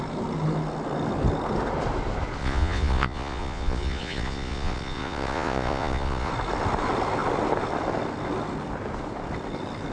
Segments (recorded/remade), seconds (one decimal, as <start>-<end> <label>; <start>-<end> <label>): 0.0-2.4 recorded; 2.4-6.3 remade; 6.3-9.9 recorded